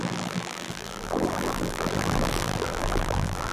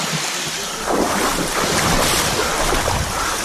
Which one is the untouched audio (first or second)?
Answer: second